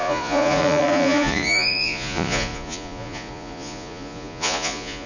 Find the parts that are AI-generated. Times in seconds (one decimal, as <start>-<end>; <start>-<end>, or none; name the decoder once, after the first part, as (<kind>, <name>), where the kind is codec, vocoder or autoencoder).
0.0-5.1 (vocoder, Vocos)